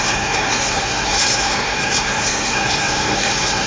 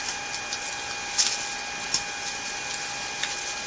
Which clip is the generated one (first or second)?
first